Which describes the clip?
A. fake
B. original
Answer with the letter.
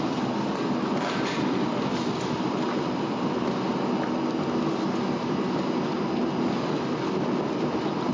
B